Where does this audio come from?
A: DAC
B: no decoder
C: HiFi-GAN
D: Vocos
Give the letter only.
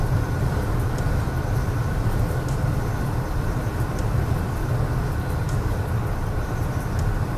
B